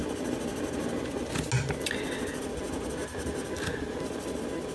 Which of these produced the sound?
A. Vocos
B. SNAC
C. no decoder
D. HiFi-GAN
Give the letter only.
C